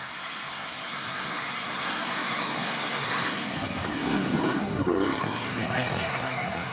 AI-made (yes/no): yes